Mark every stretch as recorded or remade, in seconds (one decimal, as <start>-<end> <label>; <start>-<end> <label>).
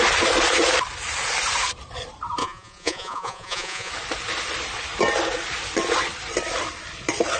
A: 0.0-2.4 recorded; 2.4-3.9 remade; 3.9-7.4 recorded